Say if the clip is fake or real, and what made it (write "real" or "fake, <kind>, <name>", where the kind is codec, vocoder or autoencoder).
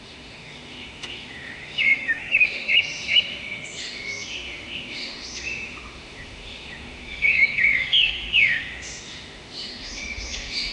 fake, autoencoder, DAC-VAE